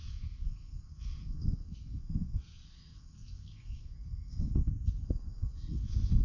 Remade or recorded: remade